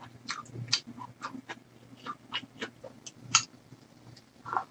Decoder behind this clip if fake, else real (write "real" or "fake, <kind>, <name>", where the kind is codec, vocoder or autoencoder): real